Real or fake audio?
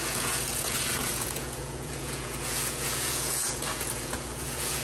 fake